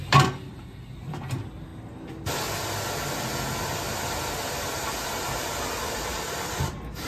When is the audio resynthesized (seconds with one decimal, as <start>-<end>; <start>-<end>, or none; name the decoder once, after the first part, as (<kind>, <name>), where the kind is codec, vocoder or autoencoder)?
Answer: 0.5-1.1 (vocoder, BigVGAN v2)